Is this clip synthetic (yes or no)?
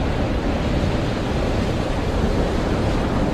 no